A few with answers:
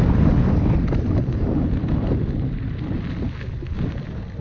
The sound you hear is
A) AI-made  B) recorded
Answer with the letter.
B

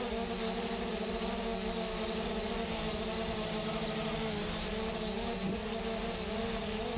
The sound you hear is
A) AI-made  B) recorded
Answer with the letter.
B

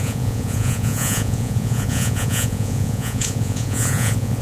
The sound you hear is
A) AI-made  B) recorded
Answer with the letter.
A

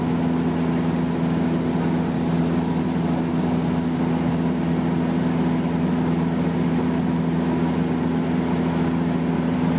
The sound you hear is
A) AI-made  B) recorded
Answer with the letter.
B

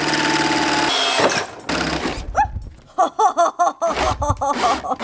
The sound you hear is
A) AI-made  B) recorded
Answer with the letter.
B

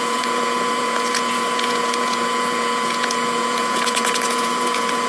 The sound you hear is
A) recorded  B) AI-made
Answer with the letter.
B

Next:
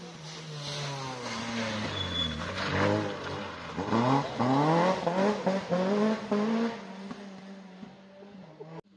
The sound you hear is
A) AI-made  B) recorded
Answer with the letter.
B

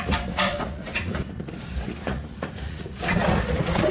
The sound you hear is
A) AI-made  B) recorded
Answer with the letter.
A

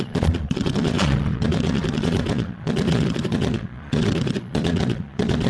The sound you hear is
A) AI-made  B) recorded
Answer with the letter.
A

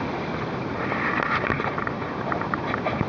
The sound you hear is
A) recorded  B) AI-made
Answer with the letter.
A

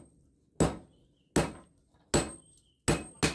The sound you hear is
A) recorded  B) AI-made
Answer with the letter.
A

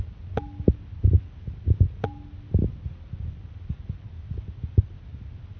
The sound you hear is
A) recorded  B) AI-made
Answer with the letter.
A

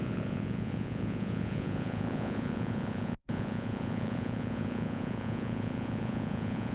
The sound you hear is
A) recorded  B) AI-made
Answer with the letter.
B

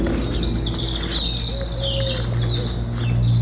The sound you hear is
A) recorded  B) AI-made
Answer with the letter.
A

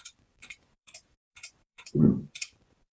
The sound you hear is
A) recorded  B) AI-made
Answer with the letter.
B